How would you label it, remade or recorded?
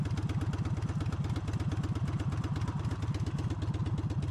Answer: recorded